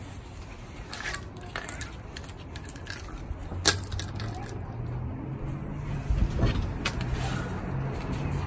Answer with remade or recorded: recorded